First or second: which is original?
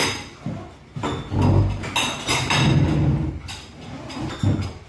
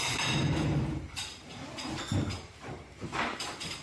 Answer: first